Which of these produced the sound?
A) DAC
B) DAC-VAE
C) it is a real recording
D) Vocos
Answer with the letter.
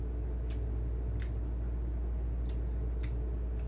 C